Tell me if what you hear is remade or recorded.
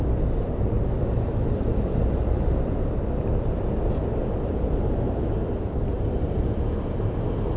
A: remade